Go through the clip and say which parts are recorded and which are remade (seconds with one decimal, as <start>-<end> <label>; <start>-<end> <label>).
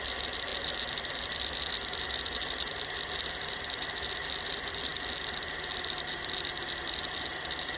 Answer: 0.0-7.8 recorded